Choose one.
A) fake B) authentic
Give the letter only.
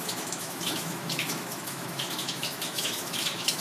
A